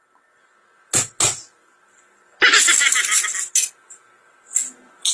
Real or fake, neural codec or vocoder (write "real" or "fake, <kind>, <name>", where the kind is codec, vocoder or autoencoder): real